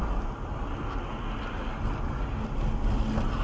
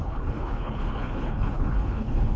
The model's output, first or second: second